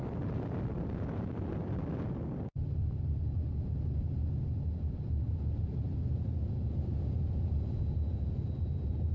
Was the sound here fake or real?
real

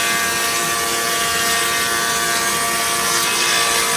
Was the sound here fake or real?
real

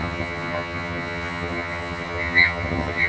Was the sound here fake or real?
fake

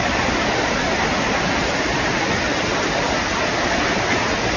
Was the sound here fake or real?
real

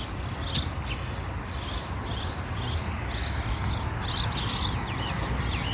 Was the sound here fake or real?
real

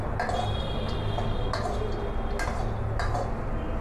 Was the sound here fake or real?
real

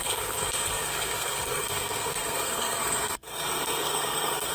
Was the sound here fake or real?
fake